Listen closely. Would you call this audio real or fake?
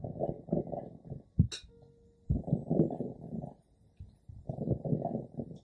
real